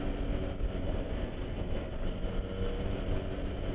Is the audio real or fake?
real